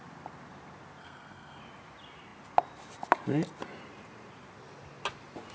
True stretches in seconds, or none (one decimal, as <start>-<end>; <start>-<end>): 0.0-1.0; 1.6-5.5